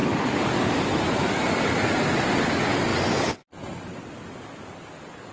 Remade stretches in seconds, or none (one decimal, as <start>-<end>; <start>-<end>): 2.9-4.0